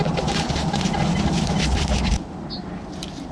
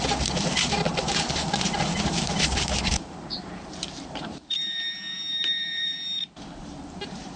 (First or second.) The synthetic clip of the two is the second